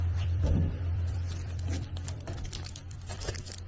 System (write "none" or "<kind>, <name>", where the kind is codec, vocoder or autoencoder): vocoder, BigVGAN v2